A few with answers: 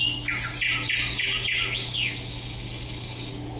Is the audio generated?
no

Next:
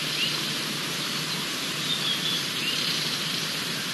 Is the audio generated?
yes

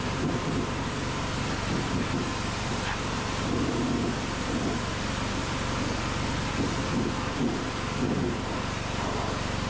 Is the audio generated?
yes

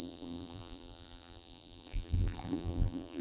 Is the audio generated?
yes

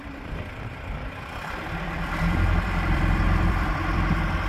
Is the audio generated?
yes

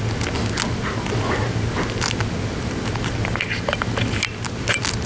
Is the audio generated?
no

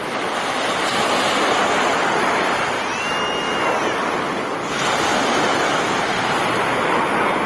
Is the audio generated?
no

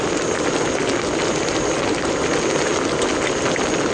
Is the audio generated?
no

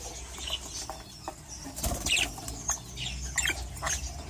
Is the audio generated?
no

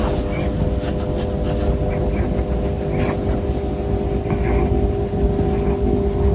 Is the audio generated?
no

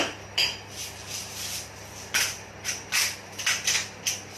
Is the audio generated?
yes